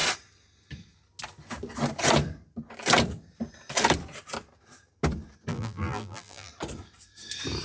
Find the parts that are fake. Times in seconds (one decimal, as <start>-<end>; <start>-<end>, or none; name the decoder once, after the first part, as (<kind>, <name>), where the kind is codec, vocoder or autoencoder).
5.5-6.5 (vocoder, BigVGAN v2)